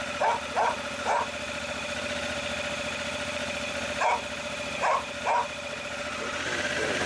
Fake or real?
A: fake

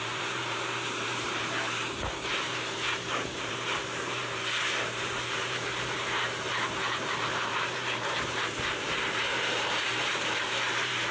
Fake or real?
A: fake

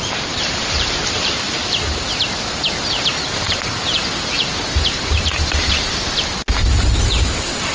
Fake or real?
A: fake